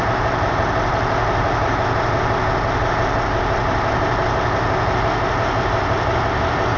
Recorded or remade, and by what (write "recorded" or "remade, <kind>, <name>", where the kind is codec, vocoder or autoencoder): recorded